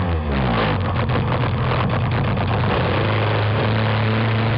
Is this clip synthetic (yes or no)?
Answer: no